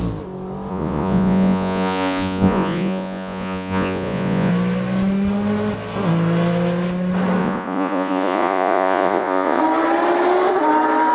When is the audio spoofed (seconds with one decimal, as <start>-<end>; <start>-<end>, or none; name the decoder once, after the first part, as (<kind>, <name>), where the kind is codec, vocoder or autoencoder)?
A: 0.7-4.5 (vocoder, Vocos); 7.4-9.6